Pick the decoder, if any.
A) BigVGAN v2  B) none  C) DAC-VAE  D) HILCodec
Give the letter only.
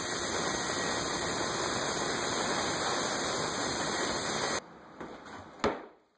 B